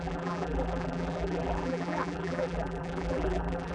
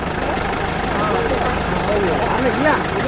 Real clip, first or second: second